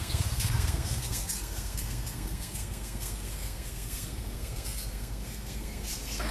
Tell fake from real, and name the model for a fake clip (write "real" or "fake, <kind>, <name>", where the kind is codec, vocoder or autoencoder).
fake, codec, SNAC